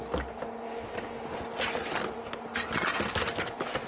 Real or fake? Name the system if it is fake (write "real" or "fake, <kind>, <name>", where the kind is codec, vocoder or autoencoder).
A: real